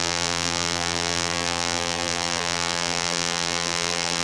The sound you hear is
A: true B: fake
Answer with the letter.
B